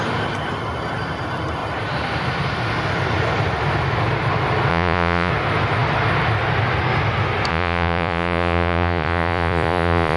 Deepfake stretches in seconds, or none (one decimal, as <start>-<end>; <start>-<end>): 4.7-5.3; 7.5-10.2